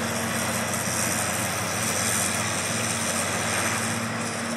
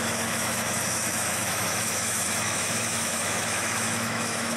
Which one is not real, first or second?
second